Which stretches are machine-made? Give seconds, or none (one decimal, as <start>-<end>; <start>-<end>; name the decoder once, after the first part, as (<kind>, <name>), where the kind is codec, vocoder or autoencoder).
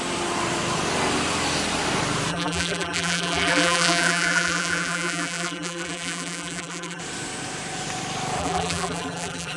2.3-7.0 (vocoder, BigVGAN v2); 8.4-9.6